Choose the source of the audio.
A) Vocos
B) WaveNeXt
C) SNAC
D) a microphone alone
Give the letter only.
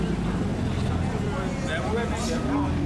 D